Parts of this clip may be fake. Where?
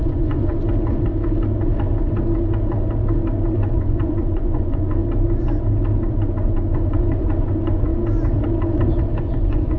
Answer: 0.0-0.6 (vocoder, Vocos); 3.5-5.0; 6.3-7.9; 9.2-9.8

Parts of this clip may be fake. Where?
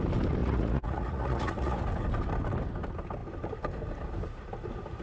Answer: 0.4-1.8 (vocoder, Vocos)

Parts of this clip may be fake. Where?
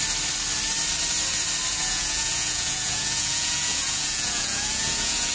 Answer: 1.7-5.3 (vocoder, Vocos)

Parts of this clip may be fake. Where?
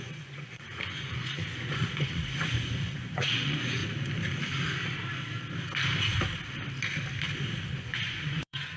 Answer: 0.0-3.8 (vocoder, Vocos); 7.7-8.8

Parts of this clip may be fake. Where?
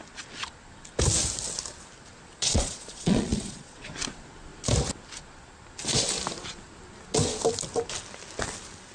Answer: 2.3-3.9 (vocoder, Vocos)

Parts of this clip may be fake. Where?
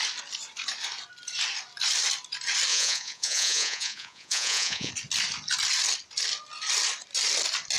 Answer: 2.7-4.9 (vocoder, Vocos)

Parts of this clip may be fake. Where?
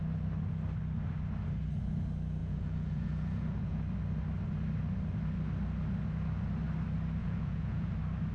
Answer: 2.4-3.8 (vocoder, Vocos); 7.2-7.9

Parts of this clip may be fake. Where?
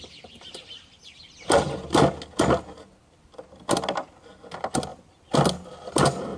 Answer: none